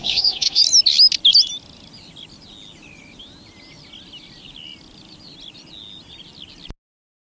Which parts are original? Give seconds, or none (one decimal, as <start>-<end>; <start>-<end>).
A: 0.6-7.4